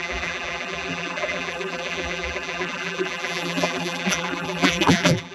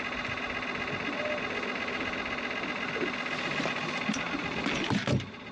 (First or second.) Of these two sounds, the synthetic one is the first